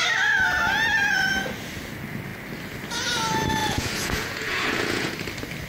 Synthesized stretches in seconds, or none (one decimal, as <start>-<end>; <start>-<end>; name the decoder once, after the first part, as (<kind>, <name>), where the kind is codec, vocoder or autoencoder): 3.6-5.1 (vocoder, Vocos)